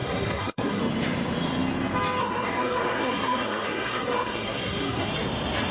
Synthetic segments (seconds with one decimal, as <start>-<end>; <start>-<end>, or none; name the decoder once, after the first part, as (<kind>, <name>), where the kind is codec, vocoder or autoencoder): 0.0-0.8 (codec, SNAC); 2.2-5.1

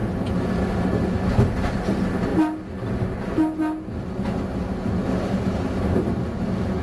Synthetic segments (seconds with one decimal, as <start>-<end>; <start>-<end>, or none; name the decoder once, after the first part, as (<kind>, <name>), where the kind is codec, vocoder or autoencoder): none